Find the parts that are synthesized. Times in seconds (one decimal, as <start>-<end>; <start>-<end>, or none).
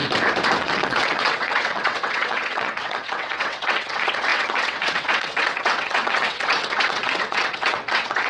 0.6-8.3